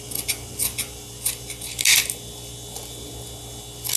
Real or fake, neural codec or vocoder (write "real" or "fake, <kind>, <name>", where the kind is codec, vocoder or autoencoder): real